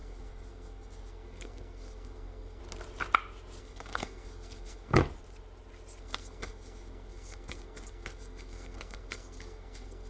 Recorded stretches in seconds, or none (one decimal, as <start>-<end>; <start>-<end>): 2.6-3.6; 5.0-6.0